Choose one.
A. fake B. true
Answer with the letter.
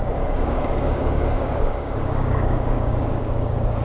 A